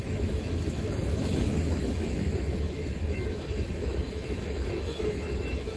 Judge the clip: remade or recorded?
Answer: remade